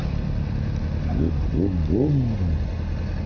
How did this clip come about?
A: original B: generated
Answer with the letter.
A